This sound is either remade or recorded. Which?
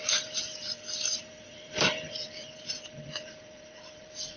remade